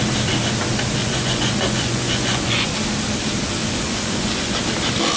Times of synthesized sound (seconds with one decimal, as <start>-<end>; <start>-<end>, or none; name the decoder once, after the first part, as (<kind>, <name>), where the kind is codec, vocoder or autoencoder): 1.0-2.7 (vocoder, Vocos); 3.6-4.5